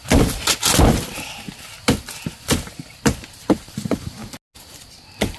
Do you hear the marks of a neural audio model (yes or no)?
no